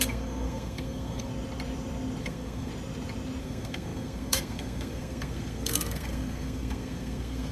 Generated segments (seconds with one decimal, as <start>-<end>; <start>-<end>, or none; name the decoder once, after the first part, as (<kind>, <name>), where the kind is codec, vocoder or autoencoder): 0.0-1.3 (codec, SNAC); 2.2-2.7; 3.4-7.5